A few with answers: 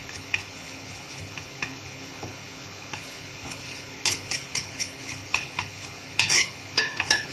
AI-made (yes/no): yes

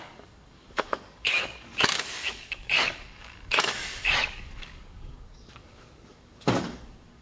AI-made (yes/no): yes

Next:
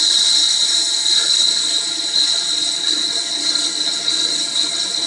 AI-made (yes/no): no